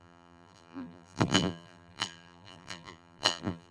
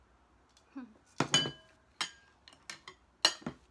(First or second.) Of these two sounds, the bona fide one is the second